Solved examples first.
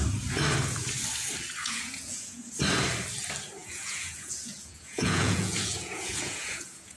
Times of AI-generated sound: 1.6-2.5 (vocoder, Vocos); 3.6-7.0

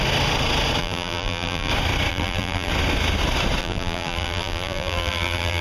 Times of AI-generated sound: 0.8-1.7 (vocoder, BigVGAN v2); 2.1-2.7; 3.6-5.6